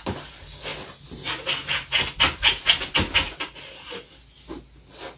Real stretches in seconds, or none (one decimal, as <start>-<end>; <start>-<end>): 0.0-5.2